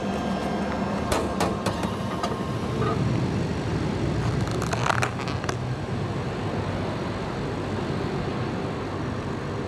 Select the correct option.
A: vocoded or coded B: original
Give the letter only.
B